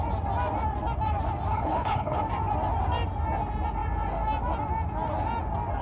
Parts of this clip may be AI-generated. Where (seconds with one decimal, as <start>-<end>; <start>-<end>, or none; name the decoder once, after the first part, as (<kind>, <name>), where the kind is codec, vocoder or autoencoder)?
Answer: 1.5-2.2 (codec, HILCodec)